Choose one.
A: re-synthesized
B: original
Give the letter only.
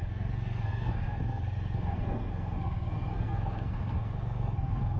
A